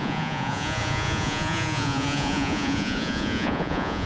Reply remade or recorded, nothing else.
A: remade